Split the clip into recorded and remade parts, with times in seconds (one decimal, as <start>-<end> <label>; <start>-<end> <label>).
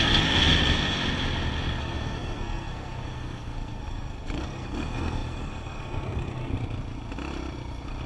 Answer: 0.0-1.0 remade; 1.0-1.8 recorded; 1.8-6.5 remade; 6.5-8.1 recorded